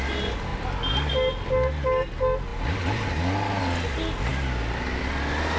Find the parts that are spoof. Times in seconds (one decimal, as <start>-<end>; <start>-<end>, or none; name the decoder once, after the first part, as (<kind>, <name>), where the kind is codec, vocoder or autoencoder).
0.5-1.1 (vocoder, BigVGAN v2)